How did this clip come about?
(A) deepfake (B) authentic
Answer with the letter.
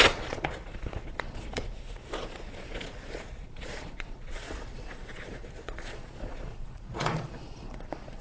A